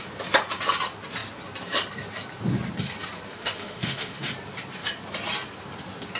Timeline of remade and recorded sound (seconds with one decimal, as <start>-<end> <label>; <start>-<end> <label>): 0.0-3.3 recorded; 3.3-4.3 remade; 4.3-6.2 recorded